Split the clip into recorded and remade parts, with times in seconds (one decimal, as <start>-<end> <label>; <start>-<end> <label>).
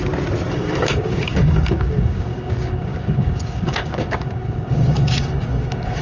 0.0-0.5 recorded; 0.5-6.0 remade